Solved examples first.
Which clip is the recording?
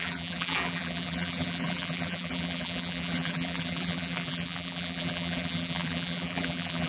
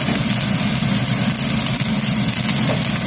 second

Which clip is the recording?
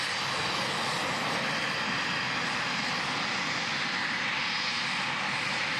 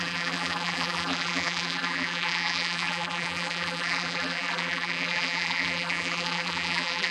first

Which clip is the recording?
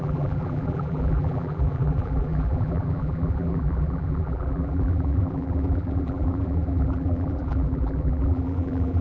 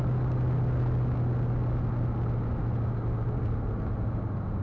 second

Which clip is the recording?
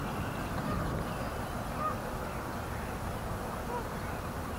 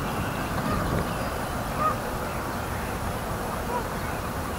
first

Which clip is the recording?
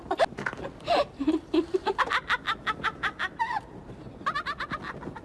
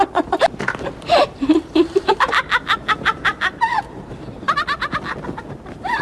first